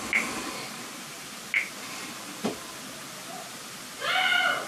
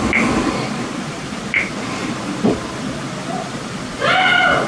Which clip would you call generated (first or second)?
second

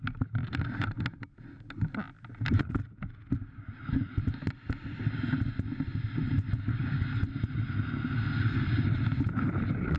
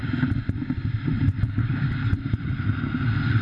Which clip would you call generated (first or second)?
second